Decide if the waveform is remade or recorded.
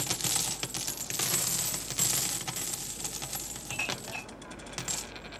recorded